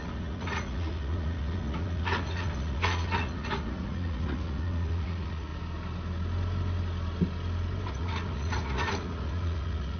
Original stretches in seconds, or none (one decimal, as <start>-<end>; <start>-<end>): 5.5-7.9